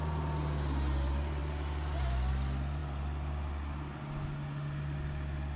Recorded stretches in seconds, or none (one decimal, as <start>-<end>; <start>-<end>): 0.0-5.6